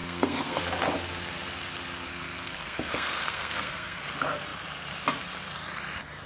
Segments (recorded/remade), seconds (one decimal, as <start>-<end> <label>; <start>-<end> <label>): 0.0-0.6 remade; 0.6-2.1 recorded; 2.1-4.0 remade; 4.0-6.3 recorded